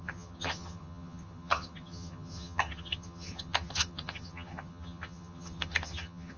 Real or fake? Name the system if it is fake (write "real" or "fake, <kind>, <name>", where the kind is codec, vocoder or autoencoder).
fake, vocoder, HiFi-GAN